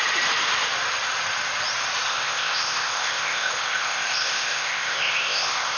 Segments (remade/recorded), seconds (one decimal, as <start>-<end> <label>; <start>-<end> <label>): 0.0-2.1 recorded; 2.1-5.8 remade